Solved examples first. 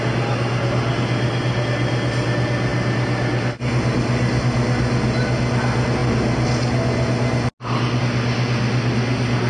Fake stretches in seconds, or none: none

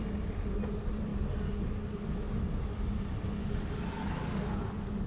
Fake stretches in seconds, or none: 3.4-5.1 (codec, DAC)

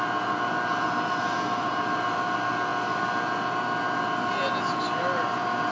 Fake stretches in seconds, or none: none